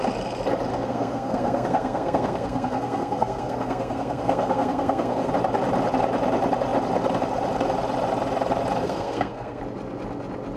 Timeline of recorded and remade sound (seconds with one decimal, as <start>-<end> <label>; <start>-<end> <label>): 0.0-0.7 recorded; 0.7-5.3 remade; 5.3-8.8 recorded; 8.8-9.6 remade; 9.6-10.6 recorded